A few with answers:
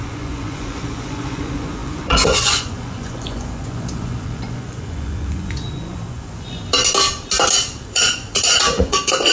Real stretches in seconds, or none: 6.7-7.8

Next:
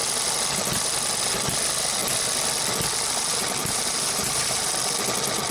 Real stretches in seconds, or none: 0.0-3.6; 4.7-5.5

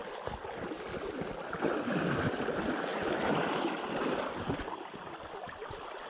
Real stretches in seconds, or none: 0.0-2.9; 4.1-6.1

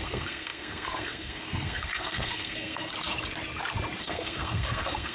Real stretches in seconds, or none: 2.9-4.0